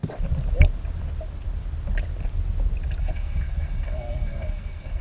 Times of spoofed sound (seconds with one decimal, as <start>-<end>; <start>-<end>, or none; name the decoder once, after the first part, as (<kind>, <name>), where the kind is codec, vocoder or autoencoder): 3.0-5.0 (codec, SNAC)